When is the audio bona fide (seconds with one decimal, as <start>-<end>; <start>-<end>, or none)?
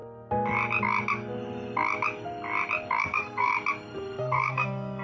0.0-3.0; 3.5-4.2